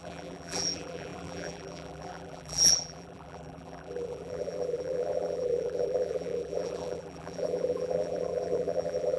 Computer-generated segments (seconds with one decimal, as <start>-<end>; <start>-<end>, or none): 0.0-9.2